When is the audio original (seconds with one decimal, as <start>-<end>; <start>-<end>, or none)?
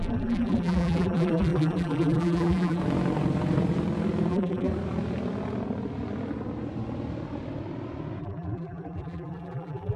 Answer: 2.8-4.3; 4.7-8.2